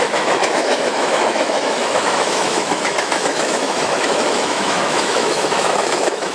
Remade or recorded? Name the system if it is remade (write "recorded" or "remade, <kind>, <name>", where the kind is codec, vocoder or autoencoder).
remade, autoencoder, DAC-VAE